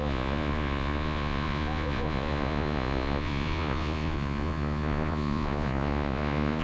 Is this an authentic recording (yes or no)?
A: no